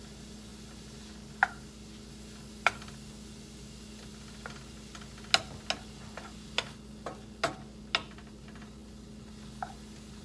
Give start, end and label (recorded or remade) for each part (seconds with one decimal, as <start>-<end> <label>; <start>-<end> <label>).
0.0-10.2 recorded